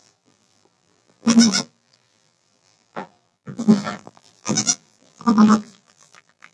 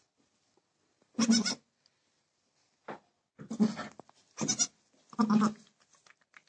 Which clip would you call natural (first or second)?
second